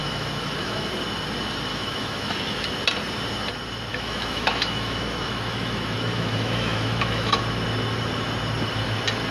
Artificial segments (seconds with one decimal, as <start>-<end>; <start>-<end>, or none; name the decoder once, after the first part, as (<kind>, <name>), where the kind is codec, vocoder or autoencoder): 0.0-0.9 (autoencoder, DAC-VAE); 1.7-2.7; 3.9-7.4